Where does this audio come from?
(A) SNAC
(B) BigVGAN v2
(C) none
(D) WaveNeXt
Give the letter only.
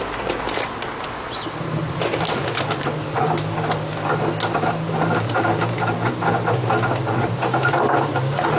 C